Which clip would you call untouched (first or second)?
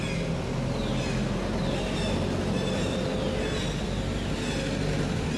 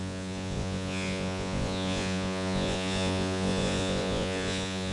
first